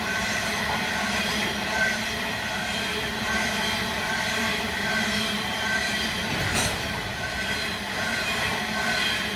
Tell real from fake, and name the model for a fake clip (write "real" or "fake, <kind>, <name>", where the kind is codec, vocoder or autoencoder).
fake, vocoder, BigVGAN v2